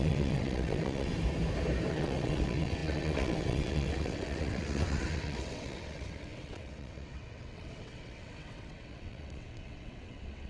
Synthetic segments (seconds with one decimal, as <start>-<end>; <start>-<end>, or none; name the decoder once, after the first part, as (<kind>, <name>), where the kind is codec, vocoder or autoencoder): 0.0-1.1 (vocoder, WaveNeXt); 1.9-10.5